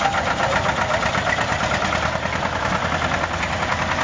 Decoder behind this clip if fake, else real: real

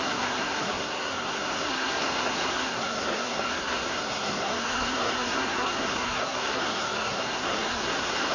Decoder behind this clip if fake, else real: fake, codec, SNAC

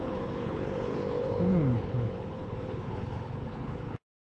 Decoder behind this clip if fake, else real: fake, codec, HILCodec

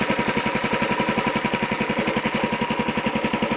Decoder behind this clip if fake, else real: real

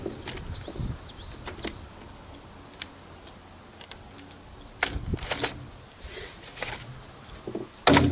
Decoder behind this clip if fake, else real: real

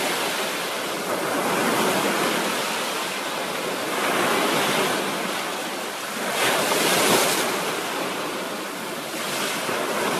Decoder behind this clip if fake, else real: real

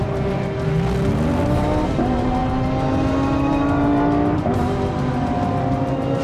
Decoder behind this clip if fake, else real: real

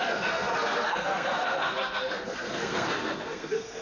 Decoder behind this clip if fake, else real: fake, codec, SNAC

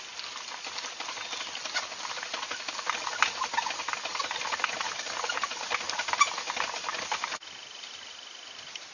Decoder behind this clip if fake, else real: real